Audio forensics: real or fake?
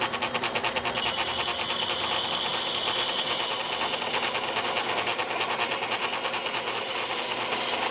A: real